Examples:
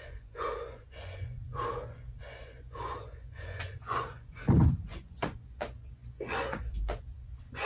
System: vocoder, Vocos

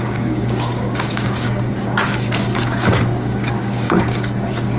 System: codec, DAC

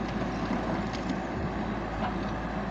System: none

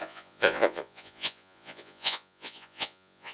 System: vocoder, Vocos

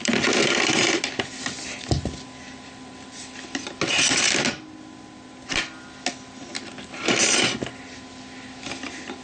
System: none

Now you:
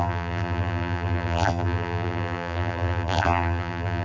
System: vocoder, BigVGAN v2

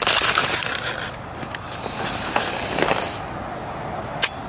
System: none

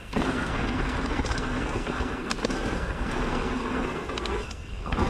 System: codec, SNAC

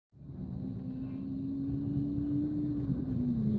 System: none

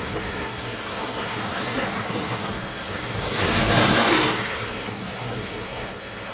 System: codec, SNAC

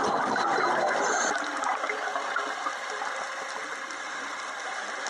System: none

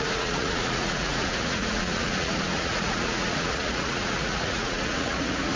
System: vocoder, Vocos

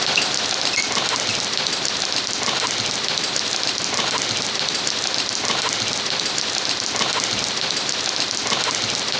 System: none